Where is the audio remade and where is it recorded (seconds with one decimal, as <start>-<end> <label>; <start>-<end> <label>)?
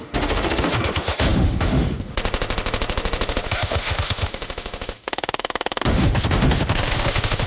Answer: 0.0-7.5 remade